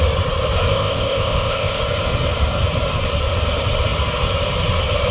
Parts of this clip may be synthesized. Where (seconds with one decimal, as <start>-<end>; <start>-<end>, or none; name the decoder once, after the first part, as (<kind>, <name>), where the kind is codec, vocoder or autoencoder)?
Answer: 0.7-1.8 (codec, ZipCodec)